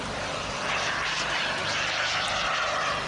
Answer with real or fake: fake